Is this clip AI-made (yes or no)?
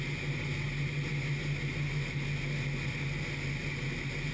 no